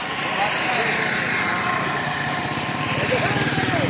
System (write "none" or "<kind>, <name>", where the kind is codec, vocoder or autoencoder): none